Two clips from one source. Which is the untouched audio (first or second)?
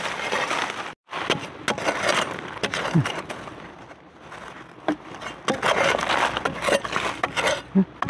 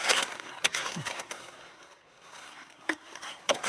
first